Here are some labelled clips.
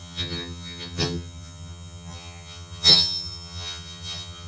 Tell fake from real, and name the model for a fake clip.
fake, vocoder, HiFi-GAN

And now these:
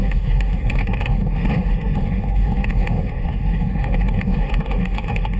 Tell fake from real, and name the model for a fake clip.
fake, autoencoder, DAC-VAE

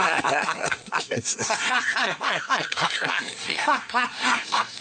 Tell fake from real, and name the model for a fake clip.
fake, codec, SNAC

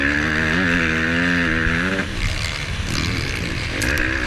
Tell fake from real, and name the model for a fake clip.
real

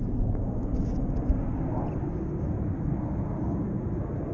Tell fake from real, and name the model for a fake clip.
real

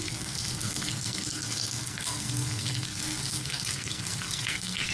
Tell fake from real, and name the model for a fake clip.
fake, codec, SNAC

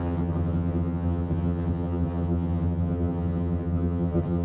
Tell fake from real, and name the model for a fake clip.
fake, vocoder, HiFi-GAN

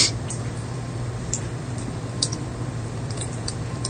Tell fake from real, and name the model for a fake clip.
fake, vocoder, BigVGAN v2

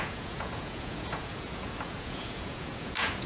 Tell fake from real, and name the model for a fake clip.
fake, vocoder, Vocos